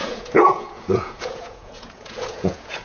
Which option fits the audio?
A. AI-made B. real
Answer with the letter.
A